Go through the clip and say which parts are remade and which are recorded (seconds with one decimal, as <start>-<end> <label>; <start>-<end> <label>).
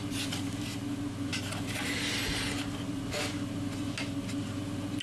0.0-5.0 recorded